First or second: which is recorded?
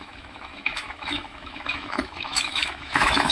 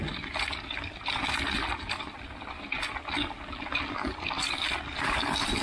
second